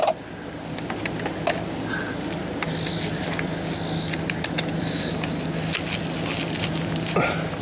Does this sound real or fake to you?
real